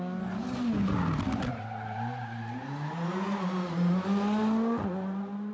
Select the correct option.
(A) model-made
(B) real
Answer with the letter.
B